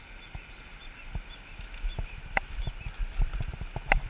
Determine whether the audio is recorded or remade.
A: recorded